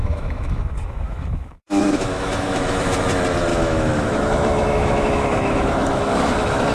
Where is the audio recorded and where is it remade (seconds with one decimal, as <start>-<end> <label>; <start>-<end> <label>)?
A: 0.0-3.0 remade; 3.0-3.5 recorded; 3.5-6.7 remade